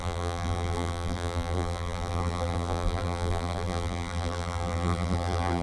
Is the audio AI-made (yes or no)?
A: yes